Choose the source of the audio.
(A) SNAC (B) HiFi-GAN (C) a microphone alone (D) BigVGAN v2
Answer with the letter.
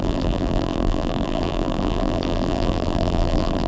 D